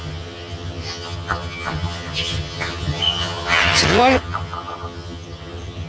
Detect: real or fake fake